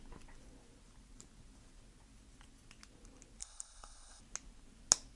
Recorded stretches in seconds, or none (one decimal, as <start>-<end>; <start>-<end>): 0.0-3.4; 4.2-5.2